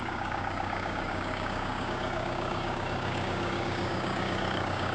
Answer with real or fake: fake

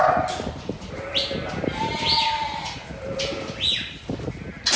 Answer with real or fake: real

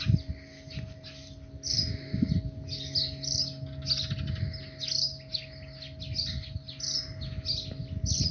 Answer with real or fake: real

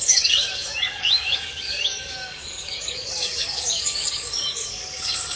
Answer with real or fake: fake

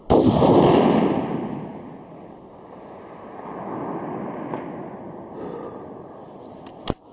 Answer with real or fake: real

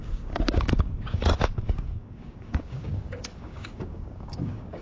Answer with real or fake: fake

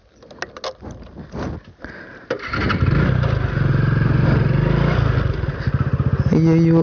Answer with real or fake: real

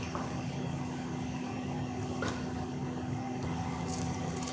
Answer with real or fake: fake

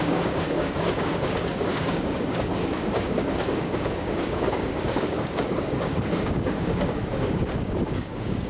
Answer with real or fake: fake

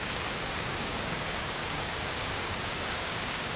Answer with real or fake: fake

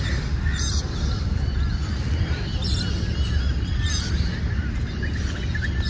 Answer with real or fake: real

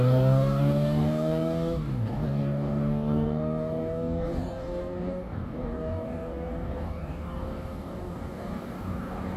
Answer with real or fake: fake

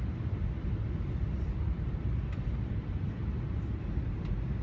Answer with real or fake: real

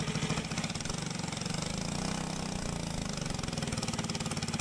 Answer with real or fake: real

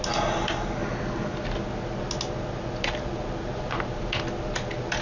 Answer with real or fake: real